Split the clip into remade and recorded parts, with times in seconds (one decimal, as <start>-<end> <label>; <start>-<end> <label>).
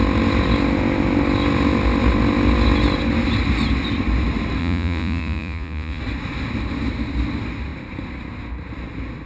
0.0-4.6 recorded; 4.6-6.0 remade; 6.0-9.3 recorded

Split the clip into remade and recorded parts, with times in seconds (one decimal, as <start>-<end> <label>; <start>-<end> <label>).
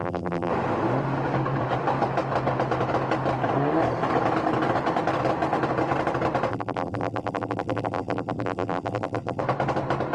0.0-0.5 remade; 0.5-6.5 recorded; 6.5-9.4 remade; 9.4-10.1 recorded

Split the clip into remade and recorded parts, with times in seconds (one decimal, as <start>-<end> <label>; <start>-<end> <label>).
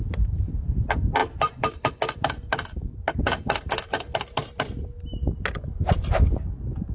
0.0-1.2 recorded; 1.2-1.9 remade; 1.9-6.9 recorded